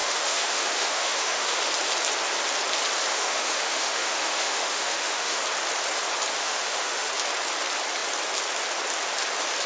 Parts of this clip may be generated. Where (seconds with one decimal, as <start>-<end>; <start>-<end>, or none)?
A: 0.0-1.7; 3.1-5.4; 6.4-7.1